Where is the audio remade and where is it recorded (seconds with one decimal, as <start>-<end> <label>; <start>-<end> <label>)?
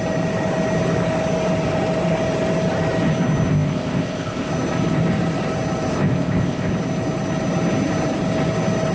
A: 0.0-3.5 recorded; 3.5-4.5 remade; 4.5-5.9 recorded; 5.9-6.7 remade; 6.7-8.9 recorded